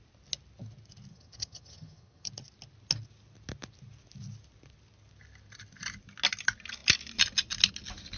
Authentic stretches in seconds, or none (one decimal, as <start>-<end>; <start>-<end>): 0.0-1.1; 2.3-8.2